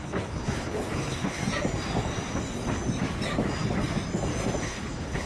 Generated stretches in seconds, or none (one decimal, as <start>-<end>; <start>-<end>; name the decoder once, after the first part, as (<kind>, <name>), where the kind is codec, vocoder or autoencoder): 0.0-1.4 (codec, HILCodec); 4.6-5.3